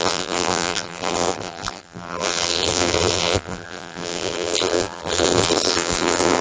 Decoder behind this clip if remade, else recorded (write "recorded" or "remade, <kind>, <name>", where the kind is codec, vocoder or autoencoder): remade, vocoder, BigVGAN v2